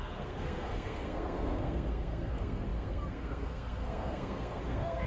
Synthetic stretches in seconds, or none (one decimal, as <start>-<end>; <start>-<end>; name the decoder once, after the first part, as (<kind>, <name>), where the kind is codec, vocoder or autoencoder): 0.0-5.1 (codec, SNAC)